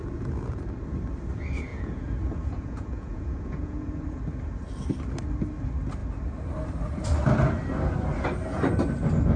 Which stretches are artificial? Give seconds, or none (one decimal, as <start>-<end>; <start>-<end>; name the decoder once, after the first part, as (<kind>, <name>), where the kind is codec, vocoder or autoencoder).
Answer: 0.0-0.6 (vocoder, Vocos); 1.7-4.2